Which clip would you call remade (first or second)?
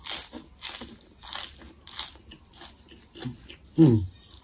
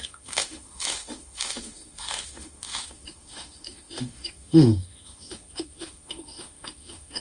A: second